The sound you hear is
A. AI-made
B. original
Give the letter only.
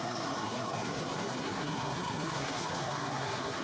A